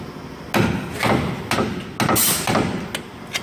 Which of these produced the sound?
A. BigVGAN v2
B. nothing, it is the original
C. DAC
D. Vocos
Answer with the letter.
B